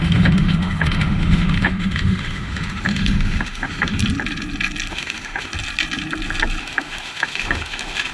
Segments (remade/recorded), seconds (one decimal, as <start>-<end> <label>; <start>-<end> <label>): 0.0-4.0 remade; 4.0-4.9 recorded; 4.9-5.5 remade; 5.5-6.6 recorded; 6.6-8.1 remade